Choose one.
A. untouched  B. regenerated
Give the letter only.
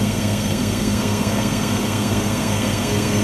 B